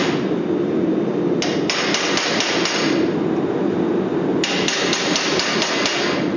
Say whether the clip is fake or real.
real